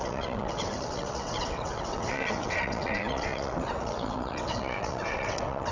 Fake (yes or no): yes